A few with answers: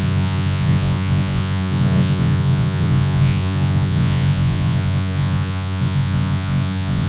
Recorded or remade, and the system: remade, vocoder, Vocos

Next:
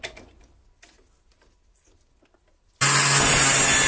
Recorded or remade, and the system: recorded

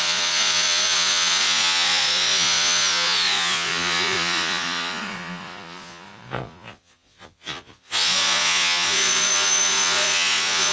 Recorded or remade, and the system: remade, vocoder, Vocos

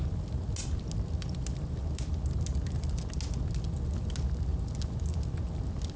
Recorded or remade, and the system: recorded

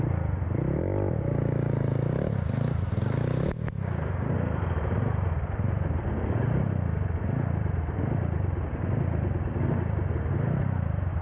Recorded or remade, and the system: recorded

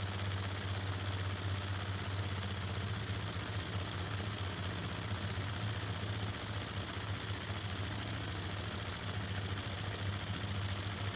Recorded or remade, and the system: recorded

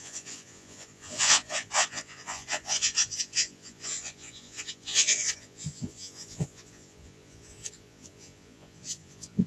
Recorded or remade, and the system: remade, vocoder, Vocos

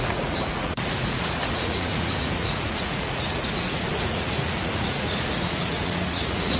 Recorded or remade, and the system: remade, vocoder, Vocos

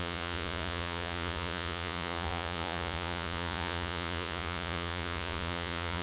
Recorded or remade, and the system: remade, vocoder, Vocos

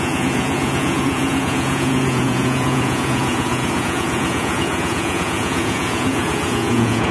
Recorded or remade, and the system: remade, vocoder, Vocos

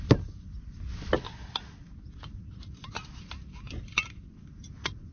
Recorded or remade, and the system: recorded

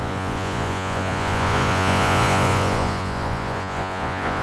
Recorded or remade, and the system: remade, vocoder, Vocos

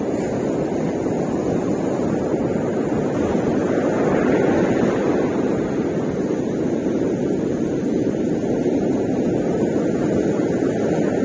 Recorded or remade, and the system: recorded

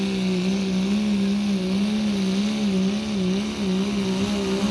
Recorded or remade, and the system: recorded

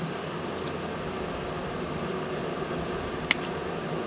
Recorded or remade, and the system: recorded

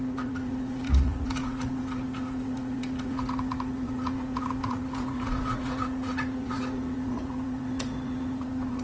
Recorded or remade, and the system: remade, vocoder, Vocos